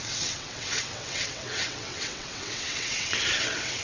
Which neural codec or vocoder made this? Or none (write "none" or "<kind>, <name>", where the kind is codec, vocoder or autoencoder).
vocoder, WaveNeXt